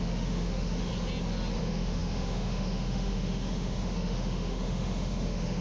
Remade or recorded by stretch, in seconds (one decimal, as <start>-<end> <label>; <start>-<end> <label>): 0.0-0.9 remade; 0.9-1.6 recorded; 1.6-5.6 remade